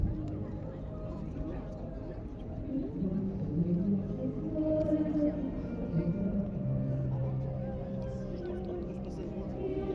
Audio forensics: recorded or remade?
remade